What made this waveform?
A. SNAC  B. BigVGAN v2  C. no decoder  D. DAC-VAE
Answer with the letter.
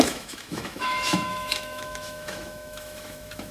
D